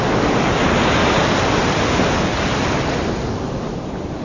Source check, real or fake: real